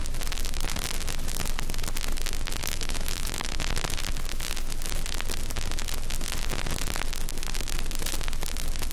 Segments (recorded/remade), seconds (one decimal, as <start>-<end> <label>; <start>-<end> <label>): 0.0-2.6 recorded; 2.6-3.7 remade; 3.7-8.9 recorded